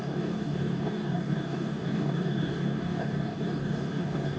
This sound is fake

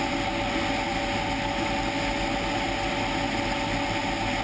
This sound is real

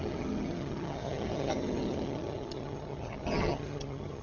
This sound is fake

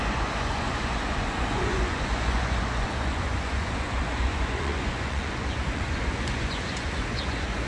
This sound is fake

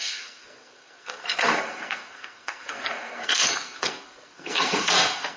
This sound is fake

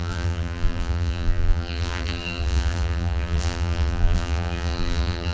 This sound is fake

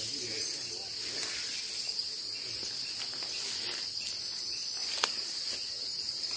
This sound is real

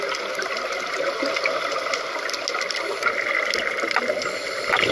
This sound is real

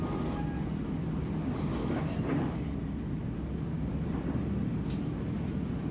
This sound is real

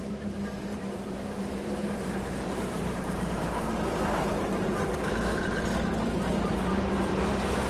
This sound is fake